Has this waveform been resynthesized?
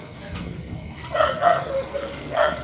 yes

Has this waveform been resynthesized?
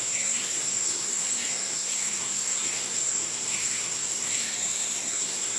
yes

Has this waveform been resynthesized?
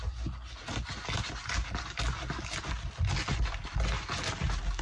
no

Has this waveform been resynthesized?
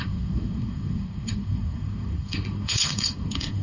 yes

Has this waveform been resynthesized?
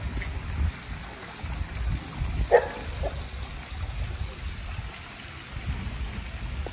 no